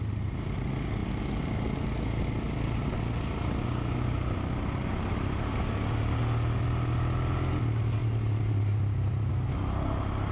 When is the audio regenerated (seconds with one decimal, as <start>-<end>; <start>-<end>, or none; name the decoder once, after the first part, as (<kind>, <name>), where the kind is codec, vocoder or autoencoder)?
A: 8.0-9.3 (vocoder, BigVGAN v2)